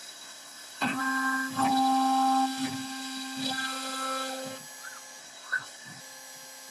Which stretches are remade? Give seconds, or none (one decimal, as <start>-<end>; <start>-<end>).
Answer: 0.0-1.0; 5.2-6.0